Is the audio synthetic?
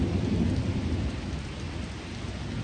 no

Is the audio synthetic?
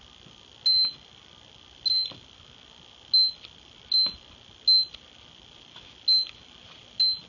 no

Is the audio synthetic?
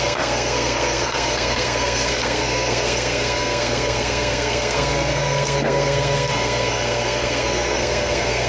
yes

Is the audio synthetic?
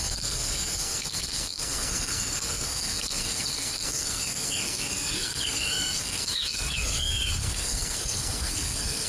yes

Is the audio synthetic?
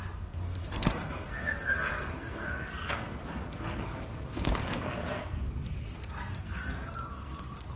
yes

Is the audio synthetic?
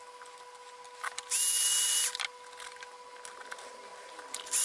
no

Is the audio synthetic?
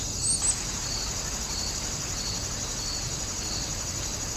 no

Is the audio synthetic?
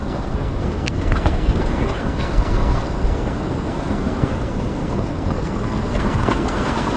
yes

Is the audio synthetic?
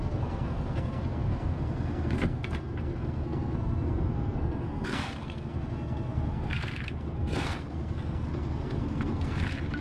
yes